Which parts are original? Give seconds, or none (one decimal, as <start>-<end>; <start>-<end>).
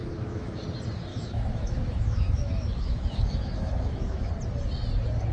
0.6-1.1; 4.3-5.3